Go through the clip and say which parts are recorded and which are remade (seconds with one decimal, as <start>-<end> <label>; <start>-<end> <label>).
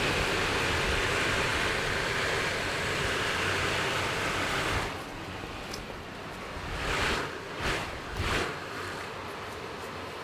0.0-10.2 recorded